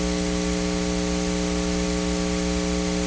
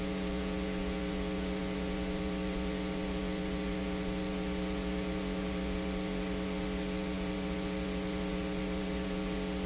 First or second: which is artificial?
second